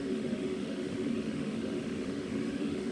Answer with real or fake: fake